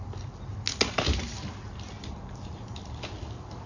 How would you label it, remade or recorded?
recorded